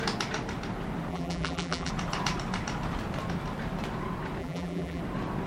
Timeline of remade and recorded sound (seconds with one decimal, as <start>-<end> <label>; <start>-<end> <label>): 0.0-1.1 recorded; 1.1-1.9 remade; 1.9-4.4 recorded; 4.4-5.0 remade; 5.0-5.5 recorded